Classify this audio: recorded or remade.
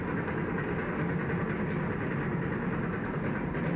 recorded